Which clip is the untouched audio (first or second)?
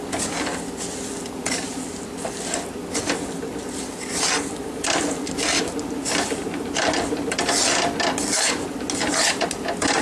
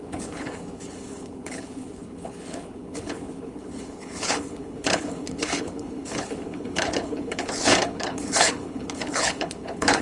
first